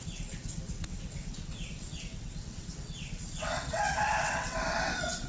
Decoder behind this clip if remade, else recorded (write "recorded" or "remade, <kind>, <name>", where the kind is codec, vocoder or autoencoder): remade, vocoder, WaveNeXt